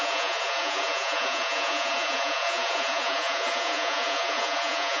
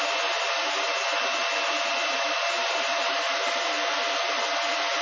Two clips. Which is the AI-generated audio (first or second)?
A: first